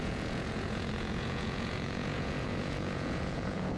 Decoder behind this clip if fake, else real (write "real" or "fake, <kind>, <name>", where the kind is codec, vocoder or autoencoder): fake, vocoder, Vocos